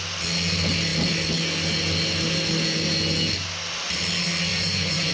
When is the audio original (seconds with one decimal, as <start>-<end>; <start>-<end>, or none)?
0.0-4.5